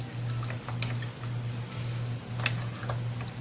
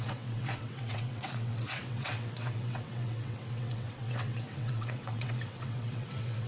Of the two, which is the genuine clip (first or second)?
first